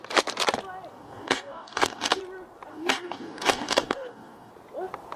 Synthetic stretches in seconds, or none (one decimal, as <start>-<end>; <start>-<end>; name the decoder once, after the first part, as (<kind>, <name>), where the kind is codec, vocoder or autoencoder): 0.9-2.2 (codec, DAC); 2.7-4.5